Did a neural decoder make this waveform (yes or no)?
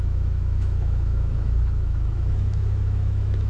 yes